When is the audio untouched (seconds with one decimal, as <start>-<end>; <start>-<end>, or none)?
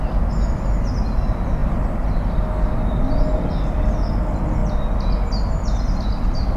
0.0-6.6